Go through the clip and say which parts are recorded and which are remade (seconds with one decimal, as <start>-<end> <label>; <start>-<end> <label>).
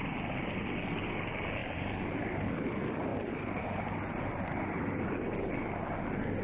0.0-1.6 recorded; 1.6-2.2 remade; 2.2-3.1 recorded; 3.1-5.1 remade; 5.1-6.4 recorded